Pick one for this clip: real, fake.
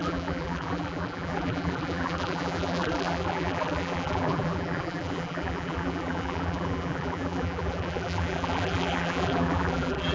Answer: fake